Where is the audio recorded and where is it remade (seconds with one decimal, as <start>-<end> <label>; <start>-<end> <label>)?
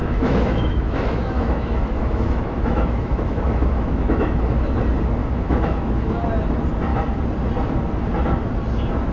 0.0-4.8 remade; 4.8-5.2 recorded; 5.2-6.1 remade; 6.1-9.1 recorded